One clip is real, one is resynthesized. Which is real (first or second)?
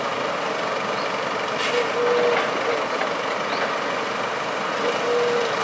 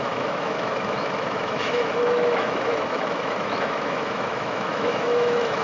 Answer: first